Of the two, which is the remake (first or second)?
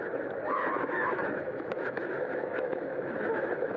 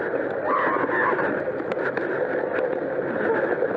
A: first